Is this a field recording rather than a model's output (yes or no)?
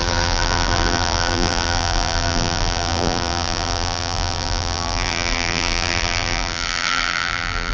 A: no